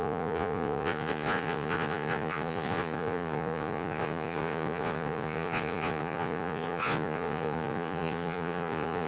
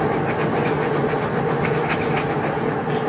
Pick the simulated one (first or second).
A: first